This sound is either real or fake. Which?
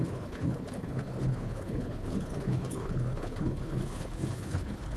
fake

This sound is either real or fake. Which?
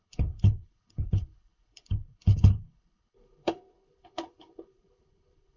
fake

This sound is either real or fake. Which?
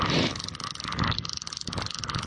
real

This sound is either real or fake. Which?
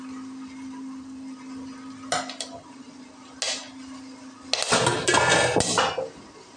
real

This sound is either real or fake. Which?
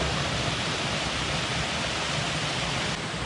real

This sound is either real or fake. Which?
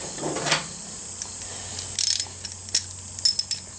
real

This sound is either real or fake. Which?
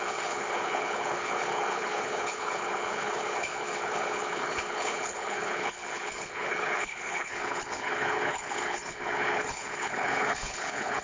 fake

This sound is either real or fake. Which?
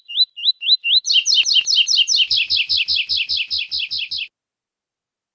real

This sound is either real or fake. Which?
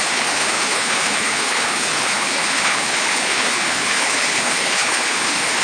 fake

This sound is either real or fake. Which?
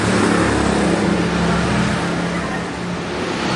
real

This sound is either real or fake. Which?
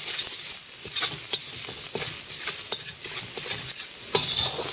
real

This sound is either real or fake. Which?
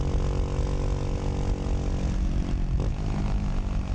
real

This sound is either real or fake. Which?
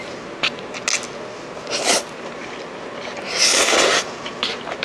real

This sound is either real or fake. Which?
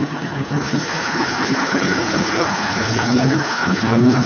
fake